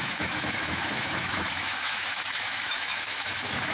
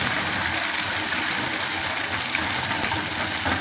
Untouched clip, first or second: second